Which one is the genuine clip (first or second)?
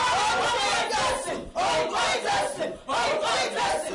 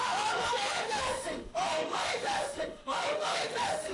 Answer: first